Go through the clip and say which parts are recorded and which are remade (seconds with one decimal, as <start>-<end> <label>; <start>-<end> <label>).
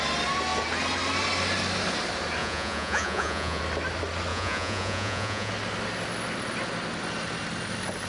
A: 0.0-2.4 recorded; 2.4-3.6 remade; 3.6-4.3 recorded; 4.3-5.5 remade; 5.5-8.1 recorded